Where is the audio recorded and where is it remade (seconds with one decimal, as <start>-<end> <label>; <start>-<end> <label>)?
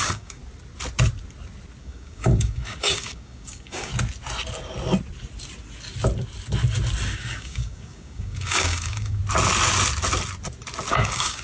0.0-0.4 remade; 0.4-1.8 recorded; 1.8-3.9 remade; 3.9-7.1 recorded; 7.1-9.2 remade; 9.2-10.9 recorded; 10.9-11.4 remade